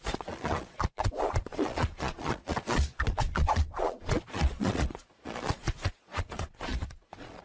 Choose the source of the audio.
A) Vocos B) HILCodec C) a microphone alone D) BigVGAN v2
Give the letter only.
A